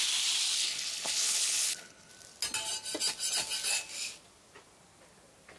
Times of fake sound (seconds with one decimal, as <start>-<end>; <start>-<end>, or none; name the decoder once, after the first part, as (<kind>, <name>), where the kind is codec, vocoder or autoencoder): 0.5-2.1 (codec, HILCodec)